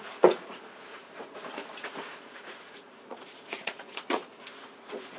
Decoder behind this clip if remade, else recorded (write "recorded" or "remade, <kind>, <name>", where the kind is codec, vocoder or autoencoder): remade, vocoder, Vocos